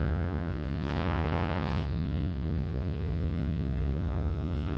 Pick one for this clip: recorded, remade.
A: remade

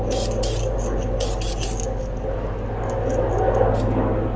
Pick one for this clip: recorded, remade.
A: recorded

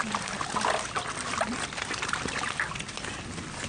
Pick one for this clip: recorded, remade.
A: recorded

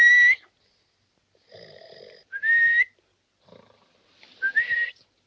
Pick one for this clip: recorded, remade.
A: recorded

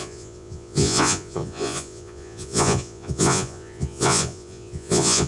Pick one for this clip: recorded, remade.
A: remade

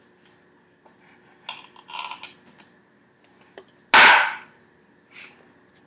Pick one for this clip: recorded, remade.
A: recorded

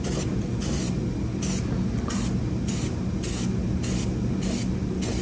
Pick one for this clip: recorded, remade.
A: recorded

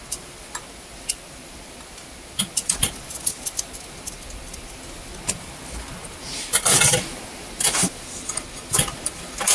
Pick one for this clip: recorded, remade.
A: recorded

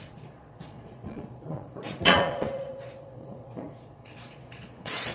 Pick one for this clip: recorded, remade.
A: remade